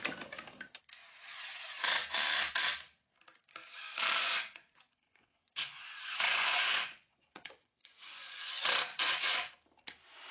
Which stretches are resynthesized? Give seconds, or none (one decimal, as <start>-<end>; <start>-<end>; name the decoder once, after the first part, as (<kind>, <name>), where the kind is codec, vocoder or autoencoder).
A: 4.2-8.5 (vocoder, Vocos); 8.9-9.5

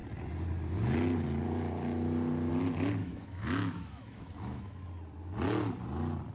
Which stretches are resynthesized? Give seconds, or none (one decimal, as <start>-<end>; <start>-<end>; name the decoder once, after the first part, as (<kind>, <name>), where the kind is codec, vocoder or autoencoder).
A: 3.0-4.7 (autoencoder, DAC-VAE)